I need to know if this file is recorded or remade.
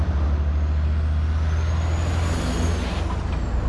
recorded